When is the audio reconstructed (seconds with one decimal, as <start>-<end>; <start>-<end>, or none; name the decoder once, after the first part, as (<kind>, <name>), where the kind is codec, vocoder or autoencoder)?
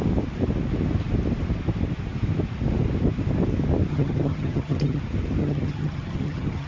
3.9-5.0 (vocoder, HiFi-GAN); 5.4-6.7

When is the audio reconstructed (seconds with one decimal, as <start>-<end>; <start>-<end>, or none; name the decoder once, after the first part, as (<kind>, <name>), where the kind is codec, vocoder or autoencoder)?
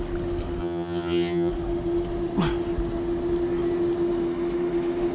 0.6-1.5 (vocoder, HiFi-GAN)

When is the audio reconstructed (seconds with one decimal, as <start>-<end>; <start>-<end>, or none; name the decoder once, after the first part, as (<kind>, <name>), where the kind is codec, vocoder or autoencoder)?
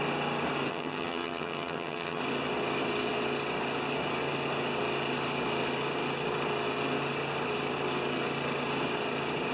0.7-2.2 (vocoder, HiFi-GAN)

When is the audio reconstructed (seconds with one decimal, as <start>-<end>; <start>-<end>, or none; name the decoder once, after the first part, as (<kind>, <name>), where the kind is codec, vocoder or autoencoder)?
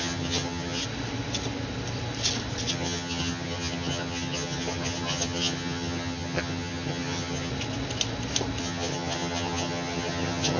0.0-0.8 (vocoder, HiFi-GAN); 2.7-7.5; 8.6-10.6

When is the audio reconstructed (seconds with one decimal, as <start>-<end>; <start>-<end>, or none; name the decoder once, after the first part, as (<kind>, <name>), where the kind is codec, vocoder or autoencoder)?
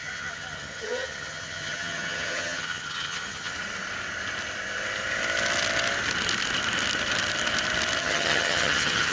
0.0-3.5 (vocoder, HiFi-GAN); 8.0-9.1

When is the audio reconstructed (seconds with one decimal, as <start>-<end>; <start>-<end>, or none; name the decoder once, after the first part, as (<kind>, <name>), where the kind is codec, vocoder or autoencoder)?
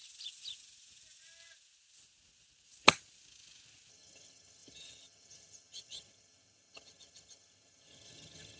3.9-8.6 (vocoder, HiFi-GAN)